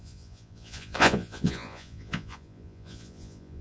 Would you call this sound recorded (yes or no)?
no